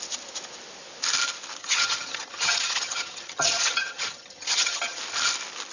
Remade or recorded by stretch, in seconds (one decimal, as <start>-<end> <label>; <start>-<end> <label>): 0.0-1.6 recorded; 1.6-5.0 remade; 5.0-5.7 recorded